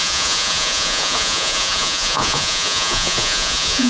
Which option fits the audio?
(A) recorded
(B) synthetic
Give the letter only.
B